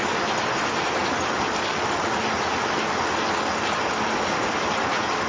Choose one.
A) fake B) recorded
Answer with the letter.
B